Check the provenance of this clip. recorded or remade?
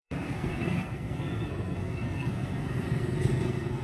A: remade